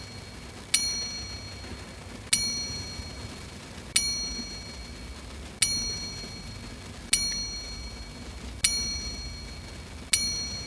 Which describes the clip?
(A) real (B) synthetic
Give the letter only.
A